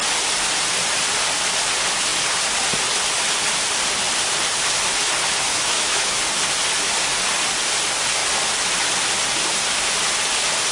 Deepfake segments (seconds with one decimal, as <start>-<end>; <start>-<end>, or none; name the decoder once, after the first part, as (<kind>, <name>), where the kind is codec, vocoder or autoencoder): 5.5-6.2 (autoencoder, DAC-VAE)